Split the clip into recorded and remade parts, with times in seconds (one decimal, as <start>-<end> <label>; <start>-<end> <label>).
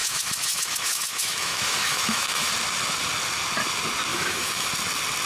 0.0-2.5 remade; 2.5-4.1 recorded; 4.1-4.7 remade; 4.7-5.3 recorded